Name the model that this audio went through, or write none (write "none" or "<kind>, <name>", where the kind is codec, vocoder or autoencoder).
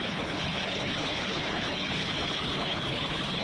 codec, HILCodec